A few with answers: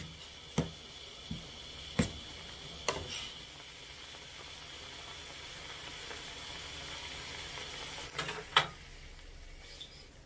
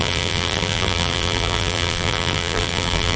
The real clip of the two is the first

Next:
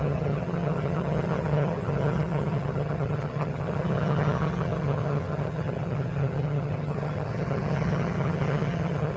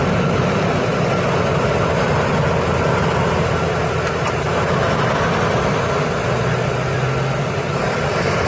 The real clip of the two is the second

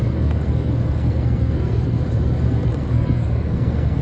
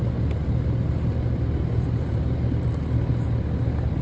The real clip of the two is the second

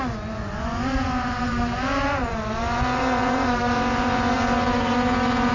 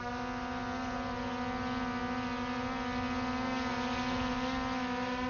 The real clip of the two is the second